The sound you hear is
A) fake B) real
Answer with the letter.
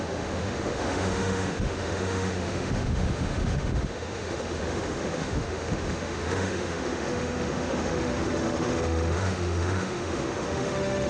A